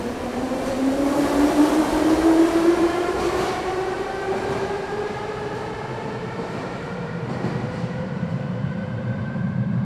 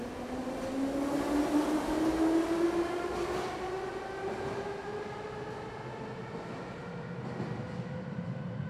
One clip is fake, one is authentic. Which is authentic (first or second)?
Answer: second